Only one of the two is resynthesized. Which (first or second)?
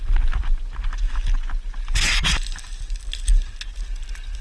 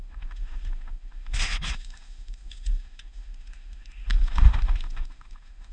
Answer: second